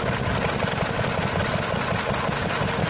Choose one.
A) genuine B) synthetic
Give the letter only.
A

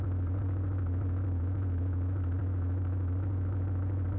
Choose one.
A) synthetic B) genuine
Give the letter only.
B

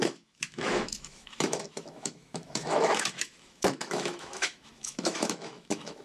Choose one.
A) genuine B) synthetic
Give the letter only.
B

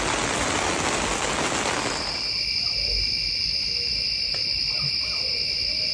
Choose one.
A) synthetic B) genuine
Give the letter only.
B